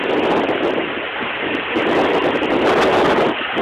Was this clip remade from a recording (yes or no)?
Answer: no